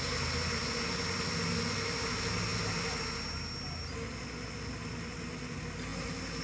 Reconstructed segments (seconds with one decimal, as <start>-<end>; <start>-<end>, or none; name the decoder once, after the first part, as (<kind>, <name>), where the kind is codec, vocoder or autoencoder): none